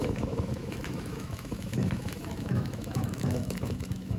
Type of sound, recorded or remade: remade